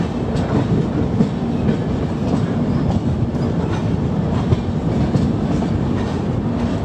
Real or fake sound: real